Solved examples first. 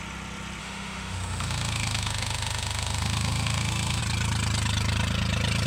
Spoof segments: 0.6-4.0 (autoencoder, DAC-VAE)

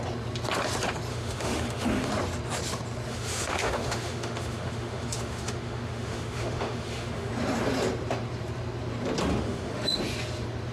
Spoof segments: 1.1-2.1 (autoencoder, DAC-VAE); 3.1-7.3; 9.3-10.0

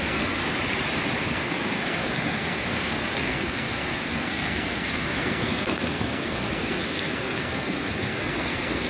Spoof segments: 0.0-0.4 (codec, SNAC); 1.2-8.9

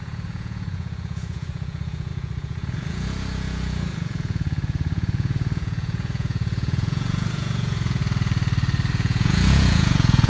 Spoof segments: 0.0-8.0 (vocoder, Vocos); 8.9-10.3

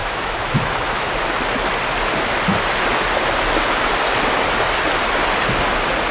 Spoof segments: 0.0-1.1 (autoencoder, DAC-VAE)

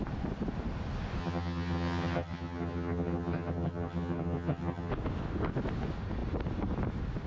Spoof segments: 1.2-4.9 (vocoder, HiFi-GAN)